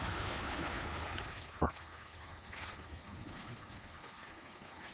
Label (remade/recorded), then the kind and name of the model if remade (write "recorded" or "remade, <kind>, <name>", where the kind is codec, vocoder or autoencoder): remade, codec, HILCodec